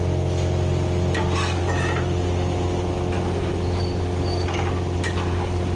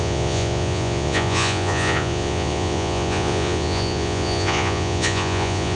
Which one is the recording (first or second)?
first